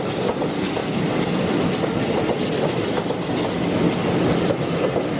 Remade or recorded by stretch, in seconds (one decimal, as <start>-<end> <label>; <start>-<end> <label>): 0.0-0.8 recorded; 0.8-1.7 remade; 1.7-5.2 recorded